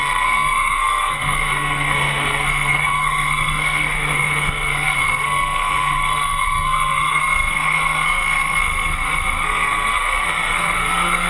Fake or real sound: fake